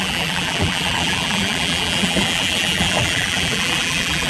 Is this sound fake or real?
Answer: fake